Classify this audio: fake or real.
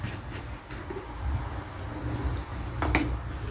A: real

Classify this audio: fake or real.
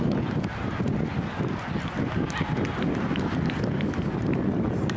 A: real